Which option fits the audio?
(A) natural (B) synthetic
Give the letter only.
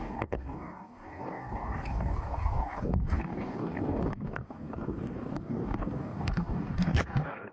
B